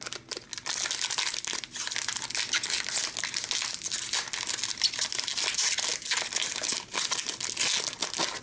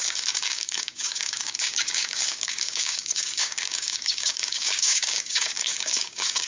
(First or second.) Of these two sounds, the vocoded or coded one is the second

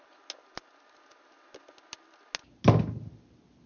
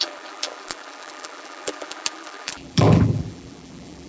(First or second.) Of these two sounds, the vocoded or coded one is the second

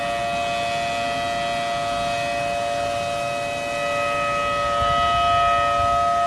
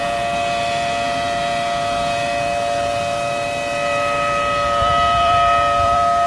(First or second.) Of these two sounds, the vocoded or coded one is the second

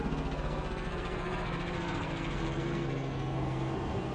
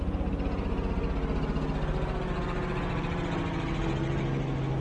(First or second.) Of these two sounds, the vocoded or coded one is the first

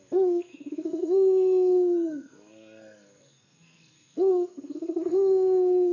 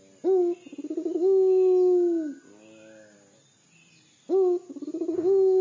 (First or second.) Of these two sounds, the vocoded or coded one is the first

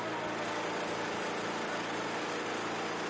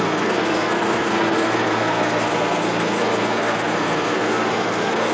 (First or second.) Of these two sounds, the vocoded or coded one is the second